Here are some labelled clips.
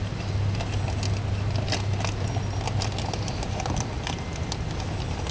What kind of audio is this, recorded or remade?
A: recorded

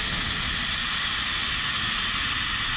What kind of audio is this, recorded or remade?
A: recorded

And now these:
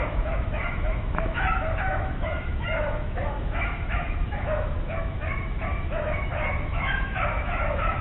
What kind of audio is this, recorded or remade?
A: remade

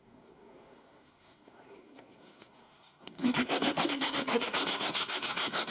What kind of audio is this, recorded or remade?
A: remade